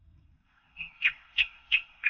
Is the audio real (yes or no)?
no